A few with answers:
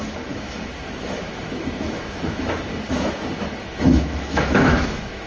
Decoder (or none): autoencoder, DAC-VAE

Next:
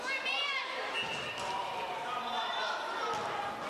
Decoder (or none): none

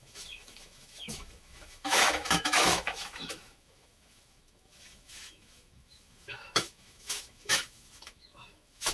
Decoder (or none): autoencoder, DAC-VAE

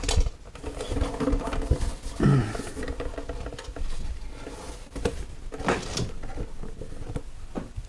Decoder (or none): none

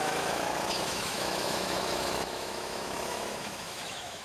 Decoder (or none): autoencoder, DAC-VAE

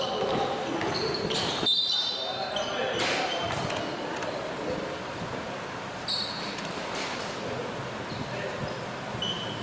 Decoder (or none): none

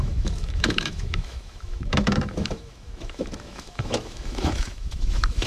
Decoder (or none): autoencoder, DAC-VAE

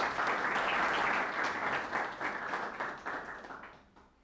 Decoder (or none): none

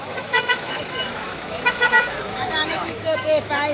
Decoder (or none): autoencoder, DAC-VAE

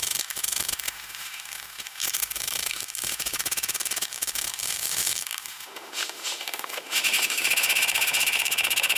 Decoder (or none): autoencoder, DAC-VAE